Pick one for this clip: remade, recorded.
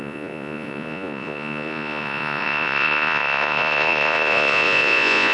remade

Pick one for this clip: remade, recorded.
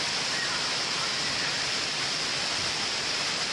recorded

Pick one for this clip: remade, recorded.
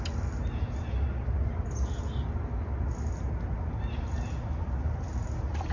recorded